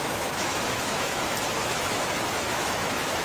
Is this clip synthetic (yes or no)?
yes